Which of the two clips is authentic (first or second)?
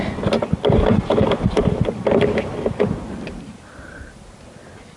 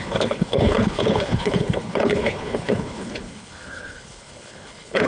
first